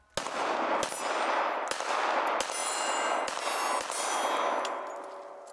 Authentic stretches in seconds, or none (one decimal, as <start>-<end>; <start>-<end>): 0.0-2.6; 4.1-5.5

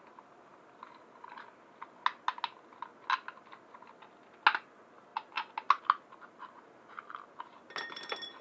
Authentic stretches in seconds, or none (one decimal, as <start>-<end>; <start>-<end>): 0.0-8.4

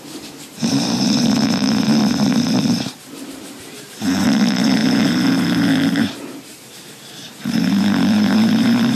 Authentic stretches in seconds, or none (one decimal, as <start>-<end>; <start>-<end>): 2.0-2.7

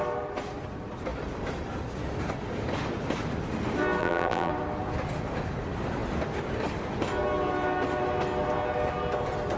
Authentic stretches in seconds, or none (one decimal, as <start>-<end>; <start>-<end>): 0.0-4.0; 4.5-9.6